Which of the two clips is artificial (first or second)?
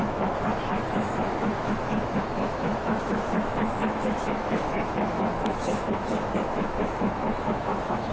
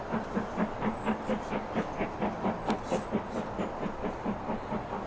first